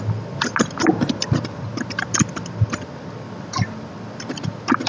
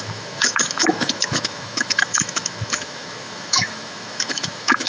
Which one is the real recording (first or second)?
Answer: first